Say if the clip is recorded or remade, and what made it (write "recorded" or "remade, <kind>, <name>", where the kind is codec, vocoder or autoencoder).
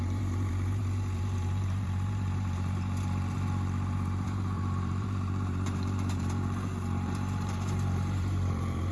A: remade, vocoder, BigVGAN v2